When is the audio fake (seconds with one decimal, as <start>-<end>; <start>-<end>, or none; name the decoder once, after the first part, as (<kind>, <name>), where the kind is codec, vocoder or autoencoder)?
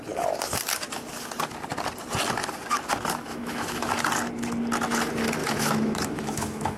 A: 3.3-3.9 (autoencoder, DAC-VAE); 5.4-6.8